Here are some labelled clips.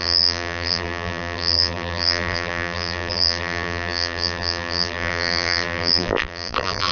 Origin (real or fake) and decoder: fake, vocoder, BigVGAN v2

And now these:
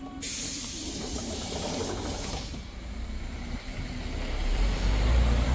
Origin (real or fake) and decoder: fake, vocoder, BigVGAN v2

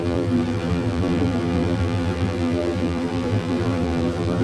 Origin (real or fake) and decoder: fake, vocoder, BigVGAN v2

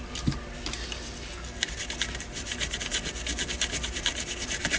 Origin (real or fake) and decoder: real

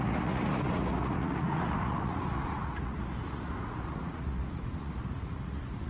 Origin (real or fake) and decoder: fake, vocoder, Vocos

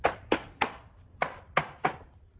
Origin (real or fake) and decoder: real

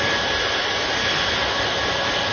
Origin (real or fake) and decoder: fake, vocoder, BigVGAN v2